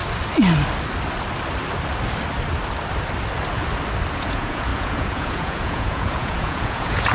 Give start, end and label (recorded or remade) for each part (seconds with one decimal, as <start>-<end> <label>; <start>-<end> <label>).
0.0-4.1 recorded; 4.1-7.1 remade